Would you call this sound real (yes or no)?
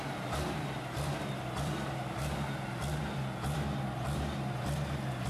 yes